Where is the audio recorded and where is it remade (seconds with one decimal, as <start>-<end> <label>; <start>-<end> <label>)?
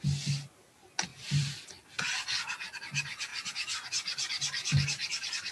0.0-1.1 recorded; 1.1-1.7 remade; 1.7-3.3 recorded; 3.3-5.5 remade